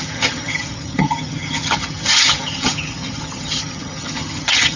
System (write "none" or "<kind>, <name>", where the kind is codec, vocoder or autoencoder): vocoder, HiFi-GAN